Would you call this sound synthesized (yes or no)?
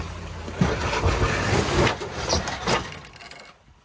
no